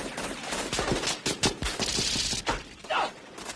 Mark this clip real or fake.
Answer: real